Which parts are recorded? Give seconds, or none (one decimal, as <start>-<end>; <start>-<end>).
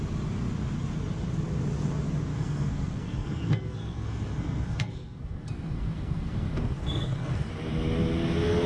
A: 0.0-2.3; 7.5-8.7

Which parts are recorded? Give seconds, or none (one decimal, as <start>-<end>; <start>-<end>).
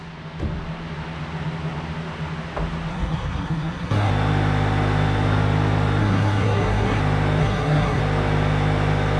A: 0.0-2.9; 4.1-6.0; 7.0-7.4; 8.0-9.2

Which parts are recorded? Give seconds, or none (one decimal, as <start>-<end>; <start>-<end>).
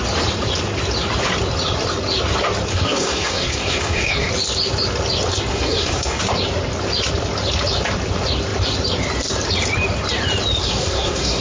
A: 0.0-2.7; 4.3-5.5; 6.2-10.6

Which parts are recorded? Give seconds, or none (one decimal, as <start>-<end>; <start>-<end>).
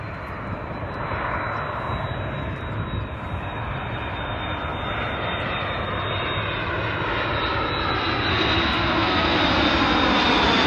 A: 0.0-8.3; 9.4-10.7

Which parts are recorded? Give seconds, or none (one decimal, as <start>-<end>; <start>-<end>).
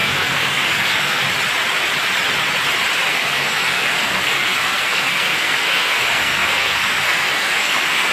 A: 1.2-3.1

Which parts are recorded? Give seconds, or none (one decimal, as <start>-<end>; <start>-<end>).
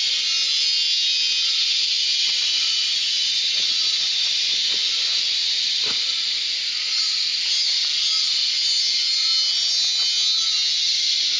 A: 0.0-11.4